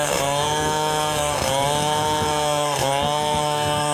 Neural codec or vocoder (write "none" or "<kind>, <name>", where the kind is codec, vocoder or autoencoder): codec, SNAC